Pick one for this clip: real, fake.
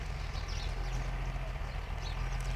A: real